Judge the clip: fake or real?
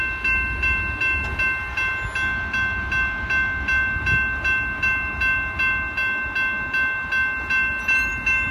real